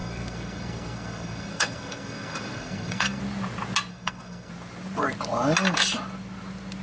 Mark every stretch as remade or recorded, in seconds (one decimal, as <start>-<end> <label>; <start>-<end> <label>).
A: 0.0-3.2 remade; 3.2-3.9 recorded; 3.9-4.5 remade; 4.5-6.8 recorded